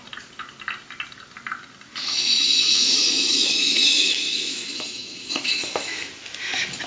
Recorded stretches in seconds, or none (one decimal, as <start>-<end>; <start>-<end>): 0.0-2.0; 6.1-6.9